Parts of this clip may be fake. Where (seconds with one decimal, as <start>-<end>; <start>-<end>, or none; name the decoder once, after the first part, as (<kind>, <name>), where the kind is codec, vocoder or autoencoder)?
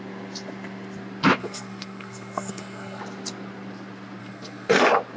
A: 1.4-3.0 (codec, SNAC); 4.2-4.8